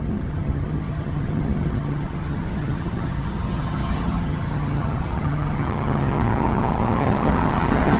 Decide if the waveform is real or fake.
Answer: fake